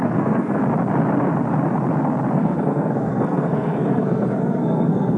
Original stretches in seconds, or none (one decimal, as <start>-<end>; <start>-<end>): 0.6-2.3